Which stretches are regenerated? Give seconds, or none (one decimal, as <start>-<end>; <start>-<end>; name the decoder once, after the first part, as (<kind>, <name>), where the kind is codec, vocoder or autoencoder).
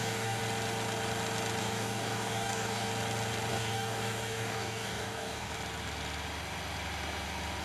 0.0-0.4 (codec, DAC); 1.6-2.9; 3.5-5.5